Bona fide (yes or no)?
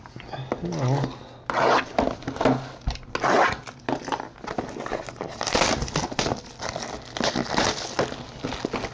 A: yes